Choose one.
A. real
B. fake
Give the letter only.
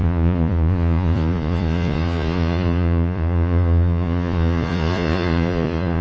B